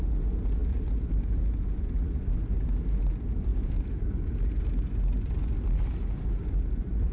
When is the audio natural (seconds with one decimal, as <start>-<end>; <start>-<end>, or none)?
0.0-3.5; 4.5-7.1